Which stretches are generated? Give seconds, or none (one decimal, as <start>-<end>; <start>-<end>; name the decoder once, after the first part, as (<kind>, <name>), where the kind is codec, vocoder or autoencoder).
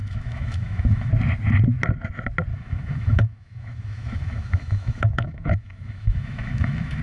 0.0-1.1 (autoencoder, DAC-VAE); 2.5-7.0